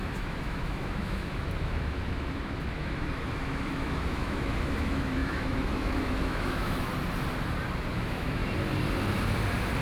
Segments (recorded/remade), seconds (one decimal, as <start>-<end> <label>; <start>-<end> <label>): 0.0-6.9 remade; 6.9-7.9 recorded; 7.9-8.4 remade; 8.4-9.8 recorded